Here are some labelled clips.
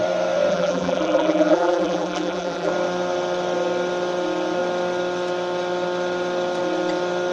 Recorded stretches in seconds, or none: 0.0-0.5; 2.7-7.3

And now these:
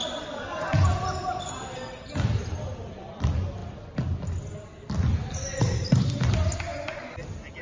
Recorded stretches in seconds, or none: 0.0-7.6

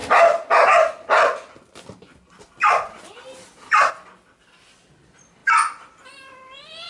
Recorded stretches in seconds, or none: 0.0-6.9

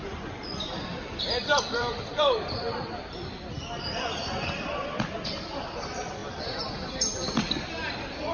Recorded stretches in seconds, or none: 6.2-7.9

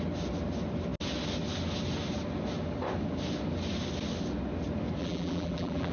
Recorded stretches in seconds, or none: 0.0-5.0

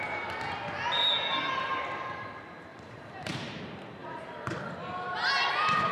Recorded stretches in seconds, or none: 0.0-2.7; 3.6-4.0; 4.6-5.9

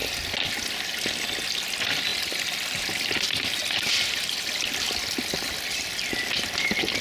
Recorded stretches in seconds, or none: 0.0-7.0

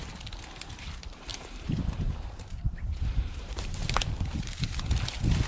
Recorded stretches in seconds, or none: 0.0-1.3; 4.6-5.5